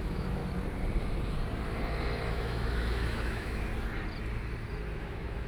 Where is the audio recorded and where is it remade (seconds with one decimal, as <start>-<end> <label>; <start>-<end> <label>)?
0.0-0.4 remade; 0.4-2.3 recorded; 2.3-3.7 remade; 3.7-5.0 recorded; 5.0-5.5 remade